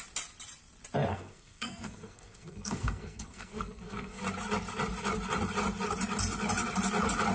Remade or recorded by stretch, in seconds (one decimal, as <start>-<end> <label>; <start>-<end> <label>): 0.0-1.1 recorded; 1.1-4.2 remade; 4.2-7.3 recorded